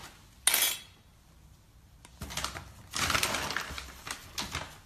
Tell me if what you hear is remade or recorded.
recorded